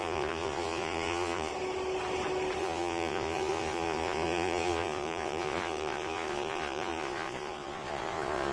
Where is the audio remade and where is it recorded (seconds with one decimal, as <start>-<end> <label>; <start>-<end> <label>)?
0.0-1.5 remade; 1.5-2.6 recorded; 2.6-8.5 remade